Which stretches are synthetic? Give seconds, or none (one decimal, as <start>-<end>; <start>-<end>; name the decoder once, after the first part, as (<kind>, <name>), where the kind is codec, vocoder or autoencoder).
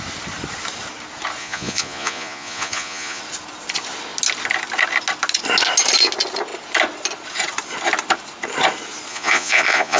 1.4-3.2 (vocoder, Vocos); 9.1-10.0